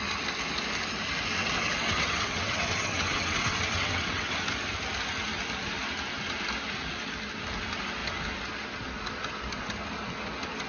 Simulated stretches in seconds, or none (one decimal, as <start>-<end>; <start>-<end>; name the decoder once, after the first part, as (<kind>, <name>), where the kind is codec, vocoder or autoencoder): 1.4-4.3 (vocoder, WaveNeXt)